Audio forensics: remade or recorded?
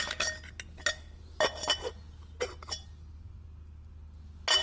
recorded